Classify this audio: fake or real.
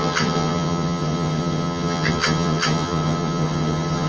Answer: fake